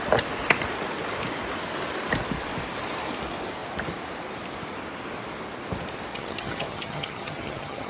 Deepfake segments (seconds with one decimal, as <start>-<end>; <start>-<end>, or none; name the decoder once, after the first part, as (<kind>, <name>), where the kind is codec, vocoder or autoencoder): 6.1-7.9 (vocoder, HiFi-GAN)